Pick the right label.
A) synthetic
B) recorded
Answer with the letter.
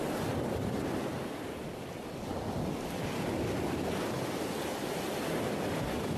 B